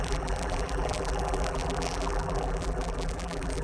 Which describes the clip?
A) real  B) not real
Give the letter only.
B